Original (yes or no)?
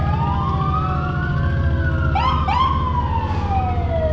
yes